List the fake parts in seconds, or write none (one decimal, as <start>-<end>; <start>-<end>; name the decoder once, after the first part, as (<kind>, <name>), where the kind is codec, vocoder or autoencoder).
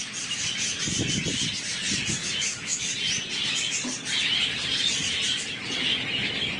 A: 2.2-2.9 (autoencoder, DAC-VAE)